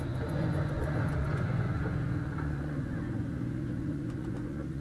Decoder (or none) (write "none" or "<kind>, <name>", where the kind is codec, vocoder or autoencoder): vocoder, Vocos